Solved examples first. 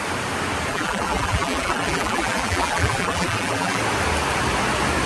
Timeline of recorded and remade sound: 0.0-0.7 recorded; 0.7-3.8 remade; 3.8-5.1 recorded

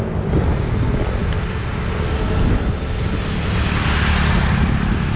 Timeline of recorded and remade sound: 0.0-5.2 recorded

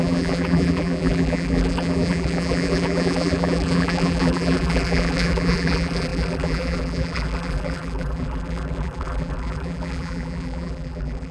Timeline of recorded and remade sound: 0.0-11.3 remade